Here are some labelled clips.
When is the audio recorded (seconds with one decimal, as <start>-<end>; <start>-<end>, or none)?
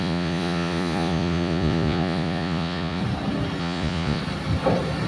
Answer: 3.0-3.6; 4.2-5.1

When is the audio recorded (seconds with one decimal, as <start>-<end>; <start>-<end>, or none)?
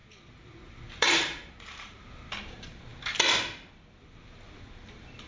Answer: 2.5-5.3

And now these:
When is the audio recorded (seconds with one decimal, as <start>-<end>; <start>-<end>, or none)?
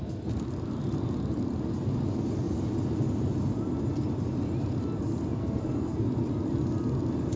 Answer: 0.0-5.4; 6.0-7.4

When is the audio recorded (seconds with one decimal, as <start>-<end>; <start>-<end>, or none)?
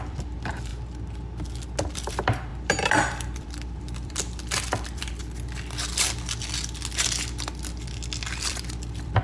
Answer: 0.7-1.9; 5.2-8.5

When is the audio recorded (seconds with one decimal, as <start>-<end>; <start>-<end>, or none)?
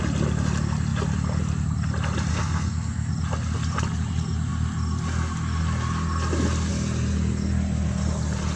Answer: 0.0-2.3; 3.1-8.6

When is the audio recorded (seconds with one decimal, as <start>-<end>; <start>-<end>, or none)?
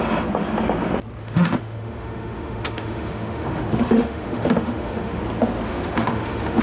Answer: 0.0-1.2; 5.2-5.7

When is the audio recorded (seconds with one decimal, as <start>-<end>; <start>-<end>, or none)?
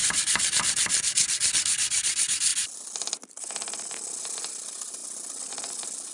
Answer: 0.6-6.1